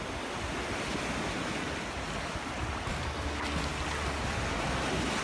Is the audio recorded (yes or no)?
yes